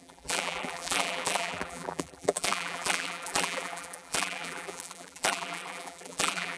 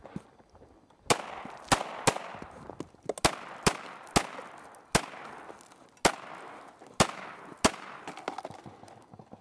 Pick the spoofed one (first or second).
first